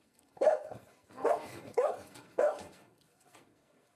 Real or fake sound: fake